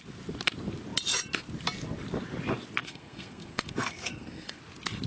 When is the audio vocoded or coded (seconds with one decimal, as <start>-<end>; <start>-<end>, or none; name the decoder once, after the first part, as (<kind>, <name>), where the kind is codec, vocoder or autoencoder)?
2.8-4.6 (codec, SNAC)